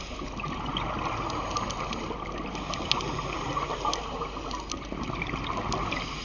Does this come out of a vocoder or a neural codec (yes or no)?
no